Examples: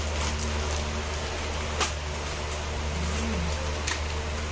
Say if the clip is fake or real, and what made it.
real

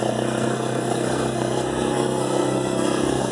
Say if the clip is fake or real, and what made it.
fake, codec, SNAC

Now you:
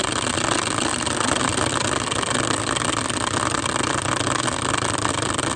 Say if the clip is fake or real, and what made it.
real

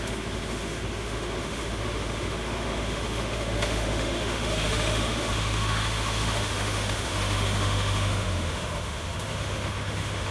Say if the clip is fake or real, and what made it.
fake, autoencoder, DAC-VAE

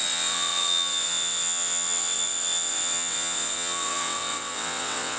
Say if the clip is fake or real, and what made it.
fake, vocoder, WaveNeXt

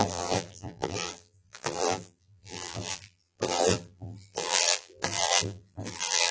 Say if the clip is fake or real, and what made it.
fake, vocoder, BigVGAN v2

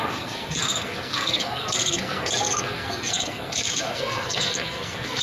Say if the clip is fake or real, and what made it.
fake, codec, SNAC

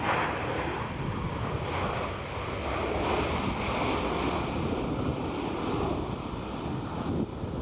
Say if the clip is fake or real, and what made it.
real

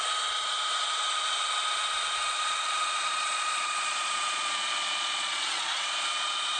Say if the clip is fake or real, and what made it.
fake, vocoder, Vocos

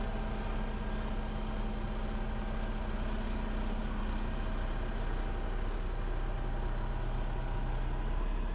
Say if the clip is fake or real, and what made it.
real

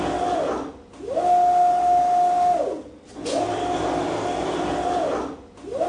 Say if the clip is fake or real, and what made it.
real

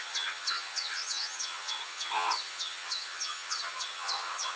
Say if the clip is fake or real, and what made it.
fake, vocoder, HiFi-GAN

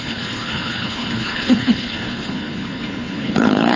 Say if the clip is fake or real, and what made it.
fake, codec, HILCodec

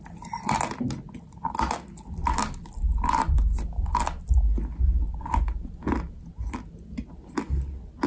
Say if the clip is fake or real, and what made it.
real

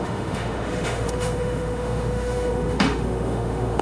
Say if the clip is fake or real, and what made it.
fake, autoencoder, DAC-VAE